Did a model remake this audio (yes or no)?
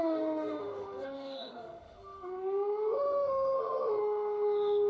yes